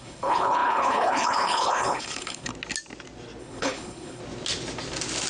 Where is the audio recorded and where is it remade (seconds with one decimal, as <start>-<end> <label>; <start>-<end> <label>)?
0.0-2.5 remade; 2.5-3.4 recorded; 3.4-4.2 remade; 4.2-5.3 recorded